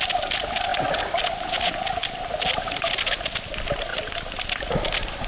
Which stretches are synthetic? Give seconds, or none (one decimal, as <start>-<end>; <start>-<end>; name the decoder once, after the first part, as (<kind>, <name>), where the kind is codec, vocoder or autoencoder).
none